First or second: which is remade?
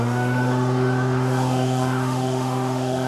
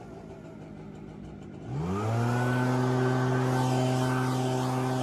first